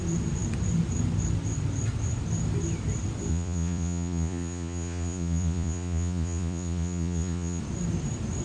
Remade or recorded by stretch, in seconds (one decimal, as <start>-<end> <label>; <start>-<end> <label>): 0.0-3.3 recorded; 3.3-7.6 remade; 7.6-8.4 recorded

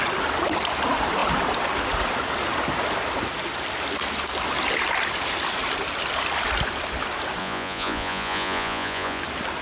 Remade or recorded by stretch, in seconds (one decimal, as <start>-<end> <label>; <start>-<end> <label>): 0.0-7.4 recorded; 7.4-9.2 remade; 9.2-9.6 recorded

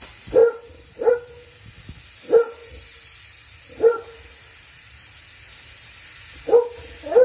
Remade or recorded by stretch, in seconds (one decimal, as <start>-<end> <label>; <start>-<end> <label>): 0.0-7.2 recorded

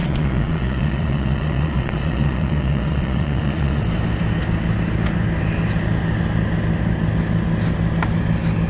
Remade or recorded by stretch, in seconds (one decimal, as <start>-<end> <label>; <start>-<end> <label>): 0.0-3.8 remade; 3.8-8.7 recorded